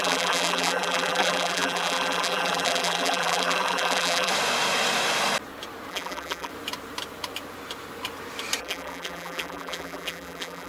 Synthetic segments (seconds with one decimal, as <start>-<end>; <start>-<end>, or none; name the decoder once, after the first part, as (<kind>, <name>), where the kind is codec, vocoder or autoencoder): 0.0-4.3 (vocoder, BigVGAN v2); 5.9-6.5; 8.6-10.7